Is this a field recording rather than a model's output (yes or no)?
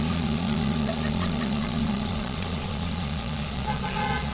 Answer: no